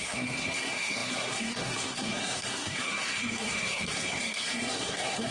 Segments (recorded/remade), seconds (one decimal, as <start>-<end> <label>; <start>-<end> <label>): 0.0-5.3 remade

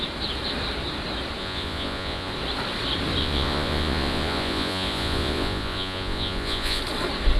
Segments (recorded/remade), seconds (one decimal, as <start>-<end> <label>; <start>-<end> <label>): 0.0-1.4 recorded; 1.4-2.3 remade; 2.3-3.2 recorded; 3.2-6.8 remade; 6.8-7.4 recorded

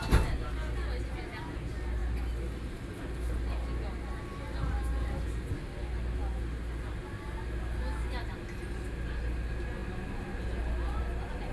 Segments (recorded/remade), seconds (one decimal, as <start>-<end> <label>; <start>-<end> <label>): 0.0-11.5 recorded

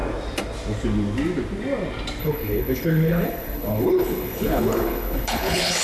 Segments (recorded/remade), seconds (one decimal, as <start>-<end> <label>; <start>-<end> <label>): 0.0-2.2 recorded; 2.2-5.8 remade

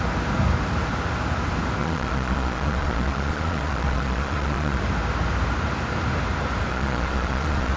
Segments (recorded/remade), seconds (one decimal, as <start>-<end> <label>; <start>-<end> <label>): 0.0-1.8 recorded; 1.8-4.8 remade; 4.8-6.7 recorded; 6.7-7.8 remade

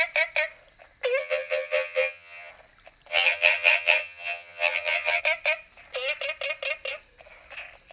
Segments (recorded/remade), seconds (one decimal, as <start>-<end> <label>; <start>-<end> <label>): 0.0-1.2 recorded; 1.2-2.5 remade; 2.5-3.1 recorded; 3.1-5.2 remade; 5.2-7.9 recorded